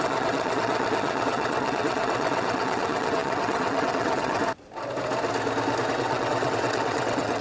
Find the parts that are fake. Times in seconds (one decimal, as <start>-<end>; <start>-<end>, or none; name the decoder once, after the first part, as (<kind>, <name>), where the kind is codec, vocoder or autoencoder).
0.0-4.4 (vocoder, WaveNeXt); 5.9-7.4

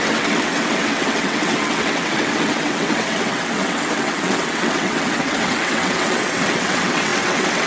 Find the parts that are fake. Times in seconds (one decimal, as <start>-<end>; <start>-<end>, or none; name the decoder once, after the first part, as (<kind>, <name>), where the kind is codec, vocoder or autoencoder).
0.0-7.7 (vocoder, WaveNeXt)

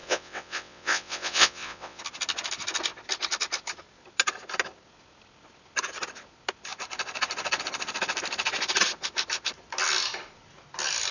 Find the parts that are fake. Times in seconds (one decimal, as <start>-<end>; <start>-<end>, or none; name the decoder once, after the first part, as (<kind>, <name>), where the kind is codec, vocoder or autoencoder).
0.0-2.0 (vocoder, WaveNeXt)

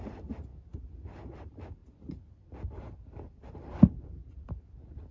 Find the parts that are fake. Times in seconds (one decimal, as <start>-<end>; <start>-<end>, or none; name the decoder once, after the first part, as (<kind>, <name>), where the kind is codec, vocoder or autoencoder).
none